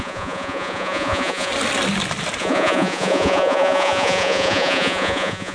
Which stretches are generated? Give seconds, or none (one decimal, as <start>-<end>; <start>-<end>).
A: 0.0-1.5; 2.4-5.5